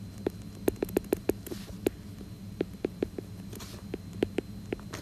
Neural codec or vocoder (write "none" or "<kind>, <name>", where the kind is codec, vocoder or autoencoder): none